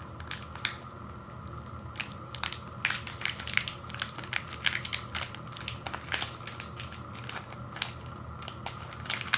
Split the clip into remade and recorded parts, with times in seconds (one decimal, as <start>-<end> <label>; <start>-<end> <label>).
0.0-9.4 recorded